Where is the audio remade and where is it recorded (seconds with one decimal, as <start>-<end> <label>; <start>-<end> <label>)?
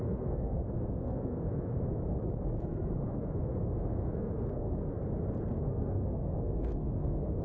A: 0.0-1.8 remade; 1.8-2.6 recorded; 2.6-4.8 remade; 4.8-5.4 recorded; 5.4-7.4 remade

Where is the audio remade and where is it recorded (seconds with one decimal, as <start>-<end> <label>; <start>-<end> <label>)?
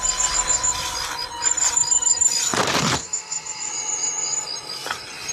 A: 0.0-3.0 recorded; 3.0-3.7 remade; 3.7-5.3 recorded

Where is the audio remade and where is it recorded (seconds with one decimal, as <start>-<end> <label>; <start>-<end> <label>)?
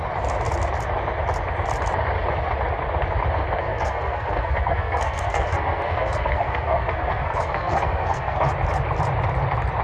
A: 0.0-3.6 recorded; 3.6-8.5 remade; 8.5-9.8 recorded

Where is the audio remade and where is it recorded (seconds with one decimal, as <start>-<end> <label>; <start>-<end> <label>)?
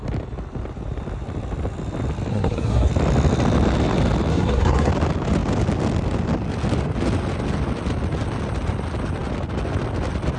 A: 0.0-2.3 recorded; 2.3-2.9 remade; 2.9-4.3 recorded; 4.3-4.9 remade; 4.9-10.4 recorded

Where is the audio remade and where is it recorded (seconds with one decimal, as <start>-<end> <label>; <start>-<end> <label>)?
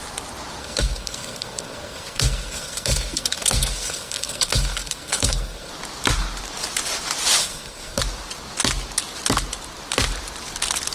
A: 0.0-0.6 recorded; 0.6-5.7 remade; 5.7-7.4 recorded; 7.4-8.0 remade; 8.0-10.9 recorded